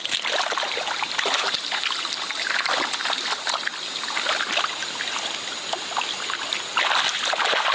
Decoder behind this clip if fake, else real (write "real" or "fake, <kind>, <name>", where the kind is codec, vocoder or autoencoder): real